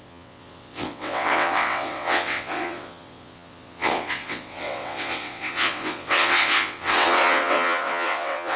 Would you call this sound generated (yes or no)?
yes